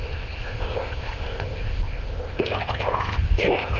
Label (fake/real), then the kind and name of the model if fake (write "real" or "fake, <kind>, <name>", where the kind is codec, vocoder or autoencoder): fake, codec, ZipCodec